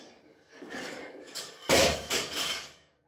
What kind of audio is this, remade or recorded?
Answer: remade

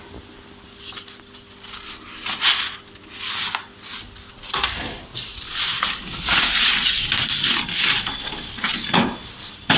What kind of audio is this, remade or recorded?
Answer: recorded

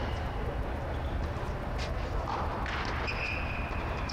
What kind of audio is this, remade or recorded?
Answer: recorded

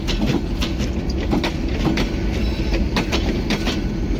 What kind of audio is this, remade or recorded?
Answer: recorded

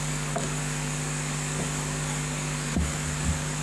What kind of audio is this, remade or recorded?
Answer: remade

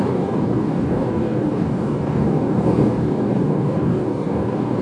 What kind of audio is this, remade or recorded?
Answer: remade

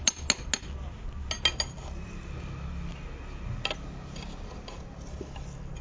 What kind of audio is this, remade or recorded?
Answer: recorded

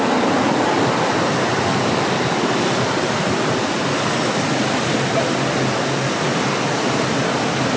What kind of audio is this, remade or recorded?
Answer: recorded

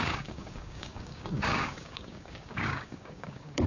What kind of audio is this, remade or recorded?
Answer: remade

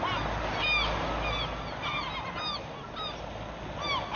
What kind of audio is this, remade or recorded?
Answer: recorded